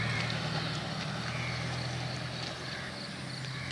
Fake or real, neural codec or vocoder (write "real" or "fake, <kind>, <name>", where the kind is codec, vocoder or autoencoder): real